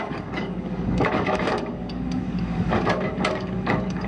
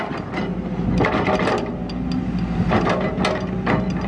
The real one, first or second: second